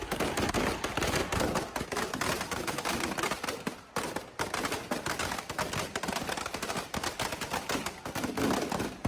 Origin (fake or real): real